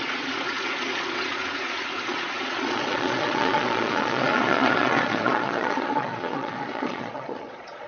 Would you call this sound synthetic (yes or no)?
yes